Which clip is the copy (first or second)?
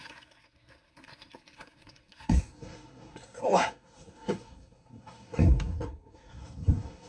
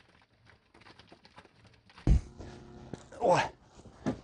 first